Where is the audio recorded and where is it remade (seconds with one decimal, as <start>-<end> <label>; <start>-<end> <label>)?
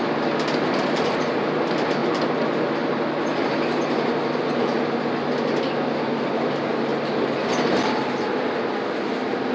0.0-9.5 recorded